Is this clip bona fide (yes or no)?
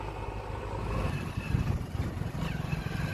yes